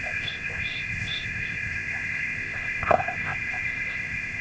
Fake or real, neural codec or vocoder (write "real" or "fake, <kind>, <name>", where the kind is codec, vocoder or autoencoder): fake, codec, ZipCodec